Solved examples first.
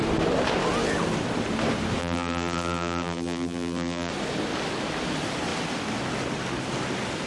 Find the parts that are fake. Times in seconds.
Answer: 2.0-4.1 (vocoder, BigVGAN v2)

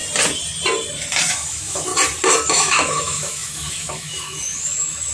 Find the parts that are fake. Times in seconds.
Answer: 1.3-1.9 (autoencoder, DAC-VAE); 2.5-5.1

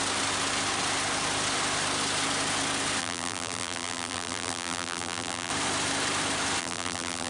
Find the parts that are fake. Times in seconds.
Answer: 3.0-5.5 (vocoder, BigVGAN v2); 6.6-7.3

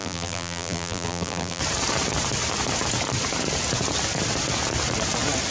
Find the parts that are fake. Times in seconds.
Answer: 0.0-1.6 (vocoder, BigVGAN v2)